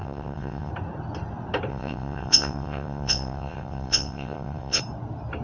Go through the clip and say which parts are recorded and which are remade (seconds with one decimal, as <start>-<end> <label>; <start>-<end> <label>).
0.0-0.7 remade; 0.7-1.7 recorded; 1.7-4.8 remade; 4.8-5.4 recorded